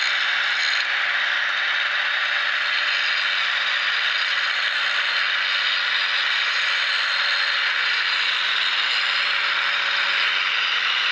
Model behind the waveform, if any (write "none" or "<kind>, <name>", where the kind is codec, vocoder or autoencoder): none